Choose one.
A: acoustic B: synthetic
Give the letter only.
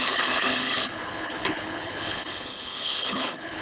B